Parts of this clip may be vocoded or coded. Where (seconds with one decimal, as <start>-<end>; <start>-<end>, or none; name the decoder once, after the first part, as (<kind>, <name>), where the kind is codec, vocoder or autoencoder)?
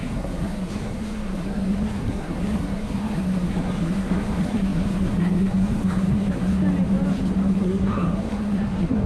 0.0-6.6 (codec, SNAC); 7.5-9.1